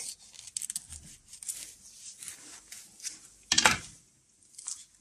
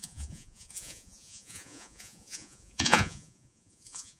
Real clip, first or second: first